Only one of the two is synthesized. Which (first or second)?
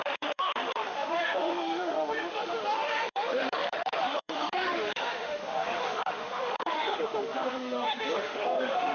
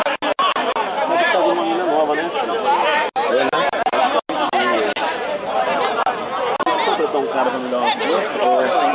first